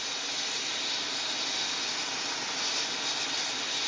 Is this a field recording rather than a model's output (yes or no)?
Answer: yes